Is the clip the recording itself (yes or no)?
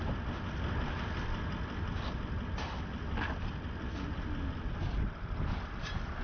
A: yes